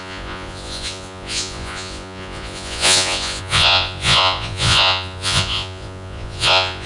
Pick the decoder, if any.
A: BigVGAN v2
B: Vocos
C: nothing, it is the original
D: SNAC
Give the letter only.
B